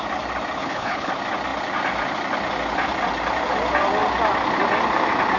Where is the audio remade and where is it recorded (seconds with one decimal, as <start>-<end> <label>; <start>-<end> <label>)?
0.0-0.6 recorded; 0.6-1.1 remade; 1.1-5.4 recorded